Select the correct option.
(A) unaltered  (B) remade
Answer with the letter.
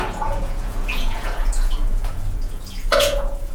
B